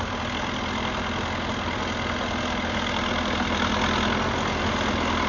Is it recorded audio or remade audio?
recorded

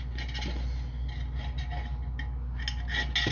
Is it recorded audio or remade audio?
recorded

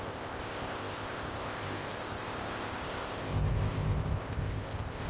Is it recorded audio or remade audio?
remade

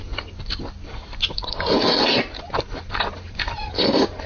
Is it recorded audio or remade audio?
recorded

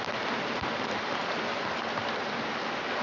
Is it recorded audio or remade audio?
recorded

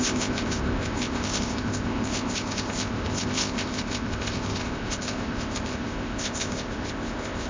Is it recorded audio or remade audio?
remade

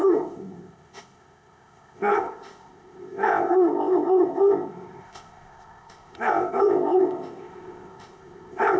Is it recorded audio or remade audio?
remade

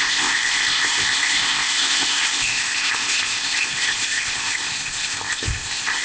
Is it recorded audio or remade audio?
remade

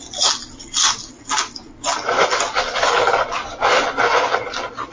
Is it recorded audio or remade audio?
recorded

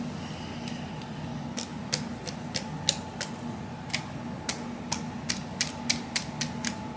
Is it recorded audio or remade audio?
recorded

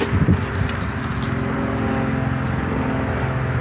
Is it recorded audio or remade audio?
recorded